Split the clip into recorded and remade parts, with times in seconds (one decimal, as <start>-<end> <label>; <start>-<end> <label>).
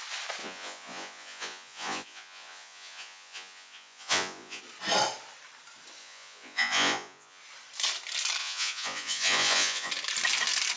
0.0-0.4 recorded; 0.4-4.6 remade; 4.6-6.0 recorded; 6.0-7.4 remade; 7.4-8.4 recorded; 8.4-9.9 remade; 9.9-10.8 recorded